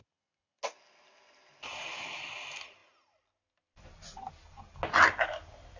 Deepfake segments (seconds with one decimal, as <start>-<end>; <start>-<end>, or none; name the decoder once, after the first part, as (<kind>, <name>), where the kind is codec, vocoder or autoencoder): none